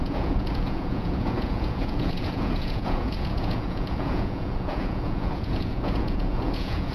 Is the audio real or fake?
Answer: fake